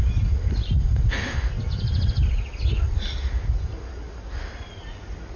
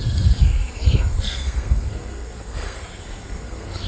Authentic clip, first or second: first